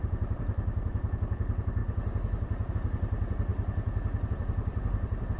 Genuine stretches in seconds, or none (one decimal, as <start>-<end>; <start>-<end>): 1.8-2.7; 3.5-4.3